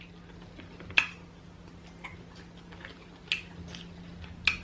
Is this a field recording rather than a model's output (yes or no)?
yes